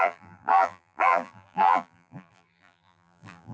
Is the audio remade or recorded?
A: remade